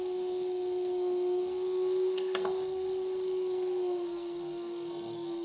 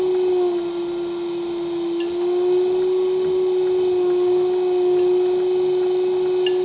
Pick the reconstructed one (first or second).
first